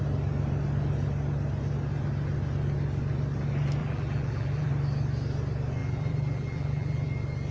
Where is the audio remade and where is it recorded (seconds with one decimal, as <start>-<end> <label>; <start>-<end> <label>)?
0.0-3.8 recorded; 3.8-4.7 remade; 4.7-5.8 recorded; 5.8-7.1 remade; 7.1-7.5 recorded